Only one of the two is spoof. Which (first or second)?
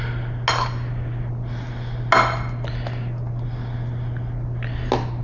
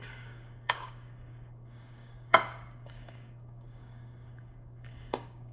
second